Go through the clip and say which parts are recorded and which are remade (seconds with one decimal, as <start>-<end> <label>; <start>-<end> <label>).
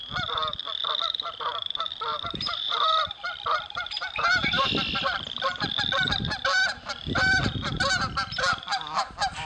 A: 0.0-2.1 recorded; 2.1-4.7 remade; 4.7-9.5 recorded